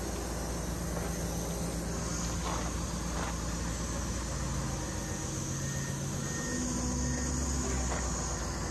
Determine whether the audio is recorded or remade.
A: recorded